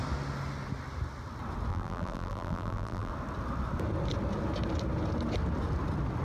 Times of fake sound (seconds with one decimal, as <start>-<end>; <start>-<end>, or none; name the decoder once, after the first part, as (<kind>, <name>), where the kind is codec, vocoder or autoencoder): 1.7-3.1 (vocoder, BigVGAN v2)